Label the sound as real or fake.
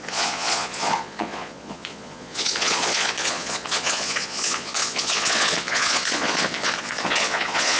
fake